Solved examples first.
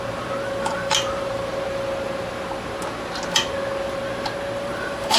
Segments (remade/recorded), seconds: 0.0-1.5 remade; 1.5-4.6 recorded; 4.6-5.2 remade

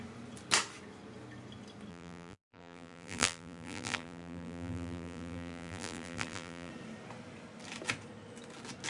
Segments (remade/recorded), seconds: 0.0-1.9 recorded; 1.9-6.7 remade; 6.7-8.9 recorded

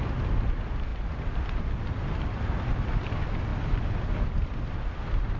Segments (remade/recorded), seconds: 0.0-5.4 remade

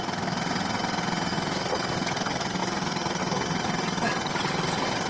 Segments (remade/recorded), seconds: 0.0-1.3 recorded; 1.3-1.9 remade; 1.9-2.6 recorded; 2.6-3.2 remade; 3.2-5.1 recorded

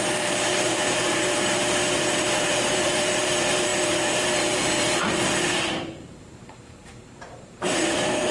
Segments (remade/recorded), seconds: 0.0-8.3 remade

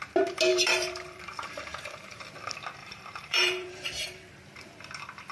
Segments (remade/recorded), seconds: 0.0-0.5 recorded; 0.5-2.3 remade; 2.3-2.8 recorded; 2.8-4.4 remade; 4.4-5.3 recorded